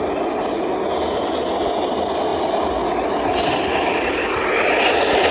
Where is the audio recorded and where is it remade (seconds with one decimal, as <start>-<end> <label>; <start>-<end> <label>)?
0.0-2.3 recorded; 2.3-5.3 remade